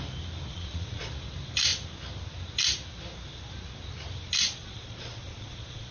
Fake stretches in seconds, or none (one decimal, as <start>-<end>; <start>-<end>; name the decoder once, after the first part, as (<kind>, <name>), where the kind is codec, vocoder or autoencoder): 0.5-1.1 (vocoder, Vocos); 4.6-5.9